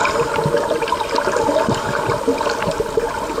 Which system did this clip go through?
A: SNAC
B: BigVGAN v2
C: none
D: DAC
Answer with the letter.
C